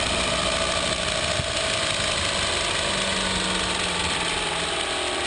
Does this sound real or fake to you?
real